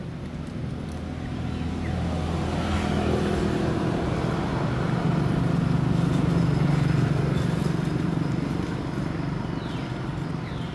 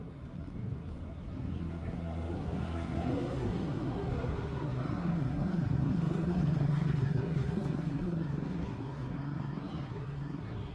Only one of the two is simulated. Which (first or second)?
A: second